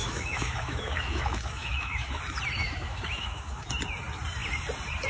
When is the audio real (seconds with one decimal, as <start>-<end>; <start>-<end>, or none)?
2.2-2.6; 3.7-5.1